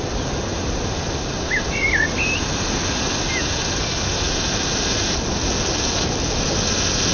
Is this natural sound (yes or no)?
yes